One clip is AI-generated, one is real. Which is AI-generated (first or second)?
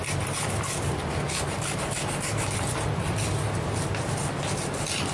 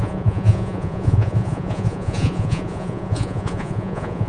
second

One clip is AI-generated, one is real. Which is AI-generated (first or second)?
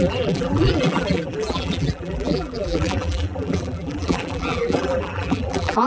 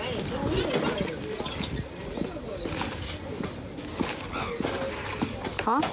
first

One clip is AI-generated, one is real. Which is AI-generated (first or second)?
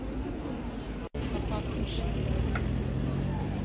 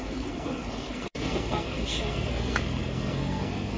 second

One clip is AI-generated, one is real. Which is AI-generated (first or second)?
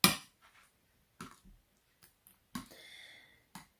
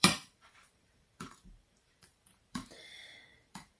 second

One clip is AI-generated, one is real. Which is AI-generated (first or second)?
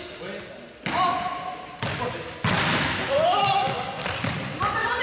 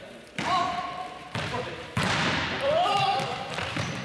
second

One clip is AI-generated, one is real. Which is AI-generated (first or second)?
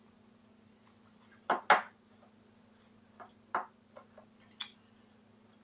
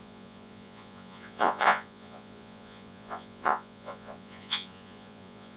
second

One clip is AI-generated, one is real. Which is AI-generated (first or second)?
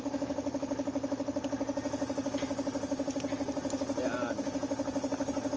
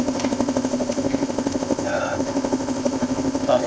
second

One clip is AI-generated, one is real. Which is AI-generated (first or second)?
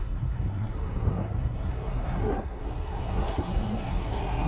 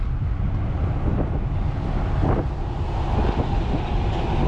first